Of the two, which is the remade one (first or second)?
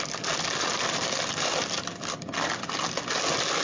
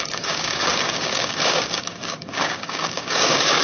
second